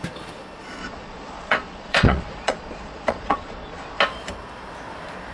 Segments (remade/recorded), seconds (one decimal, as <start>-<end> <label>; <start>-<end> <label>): 0.0-0.8 recorded; 0.8-4.0 remade; 4.0-5.3 recorded